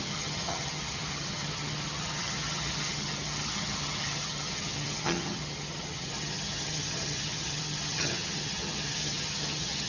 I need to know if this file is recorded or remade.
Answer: remade